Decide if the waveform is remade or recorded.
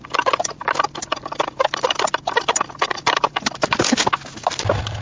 recorded